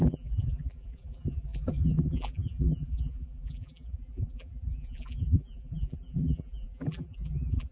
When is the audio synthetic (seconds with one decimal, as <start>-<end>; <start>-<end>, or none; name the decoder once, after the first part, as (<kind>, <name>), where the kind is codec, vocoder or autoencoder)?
0.0-7.7 (vocoder, BigVGAN v2)